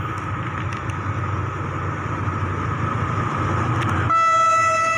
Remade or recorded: recorded